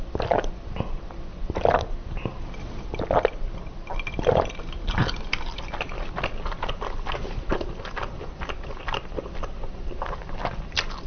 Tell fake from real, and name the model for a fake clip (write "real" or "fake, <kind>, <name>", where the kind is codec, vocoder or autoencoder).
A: real